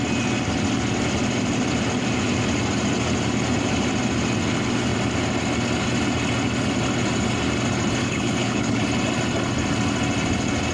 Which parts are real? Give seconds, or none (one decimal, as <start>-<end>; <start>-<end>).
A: 0.0-8.0; 8.8-10.7